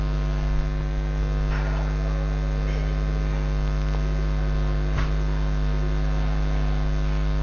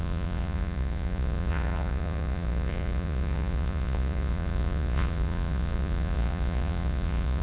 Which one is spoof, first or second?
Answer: second